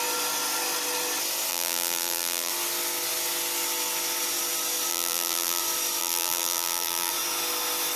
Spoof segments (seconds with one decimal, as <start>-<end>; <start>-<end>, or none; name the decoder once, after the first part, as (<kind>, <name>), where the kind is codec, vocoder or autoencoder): 1.5-2.5 (vocoder, BigVGAN v2); 4.9-5.6; 6.0-7.1

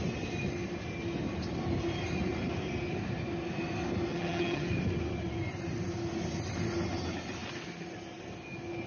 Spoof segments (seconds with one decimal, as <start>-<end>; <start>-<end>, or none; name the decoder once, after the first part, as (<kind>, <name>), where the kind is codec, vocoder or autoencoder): 4.1-4.7 (vocoder, HiFi-GAN)

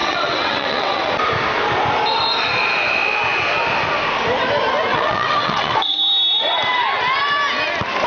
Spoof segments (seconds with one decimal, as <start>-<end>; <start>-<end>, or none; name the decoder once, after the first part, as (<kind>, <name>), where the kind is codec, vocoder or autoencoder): 0.0-1.1 (vocoder, WaveNeXt); 4.9-6.0

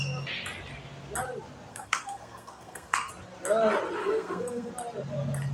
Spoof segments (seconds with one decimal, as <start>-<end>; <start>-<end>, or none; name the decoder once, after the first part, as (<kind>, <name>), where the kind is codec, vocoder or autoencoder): 1.7-3.1 (codec, SNAC); 4.0-4.7

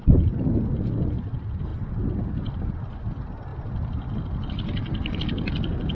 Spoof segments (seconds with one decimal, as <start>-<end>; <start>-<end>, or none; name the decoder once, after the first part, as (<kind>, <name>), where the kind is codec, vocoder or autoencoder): none

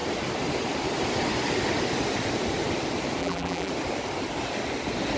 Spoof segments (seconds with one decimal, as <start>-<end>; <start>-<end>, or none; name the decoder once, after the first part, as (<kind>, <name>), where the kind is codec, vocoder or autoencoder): 3.2-3.7 (vocoder, BigVGAN v2)

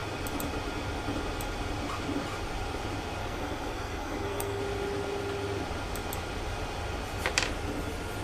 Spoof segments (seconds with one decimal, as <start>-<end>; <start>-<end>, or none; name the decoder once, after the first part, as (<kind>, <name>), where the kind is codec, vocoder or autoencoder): 3.2-4.6 (codec, SNAC)